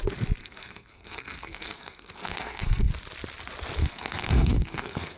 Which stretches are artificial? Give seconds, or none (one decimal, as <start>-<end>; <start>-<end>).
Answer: 0.4-2.9; 3.8-5.2